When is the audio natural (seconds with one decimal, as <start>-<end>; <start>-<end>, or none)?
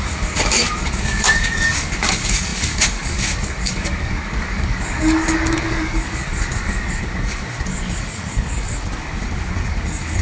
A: none